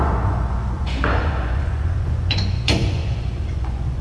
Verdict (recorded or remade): remade